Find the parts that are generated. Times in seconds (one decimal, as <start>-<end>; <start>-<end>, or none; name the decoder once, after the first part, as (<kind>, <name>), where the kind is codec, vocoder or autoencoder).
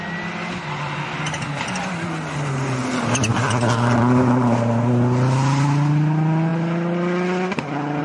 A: none